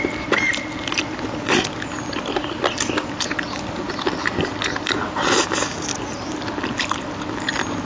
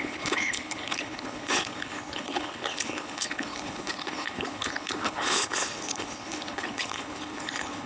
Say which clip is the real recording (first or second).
first